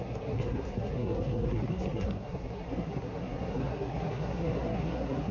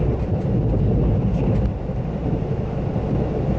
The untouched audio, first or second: second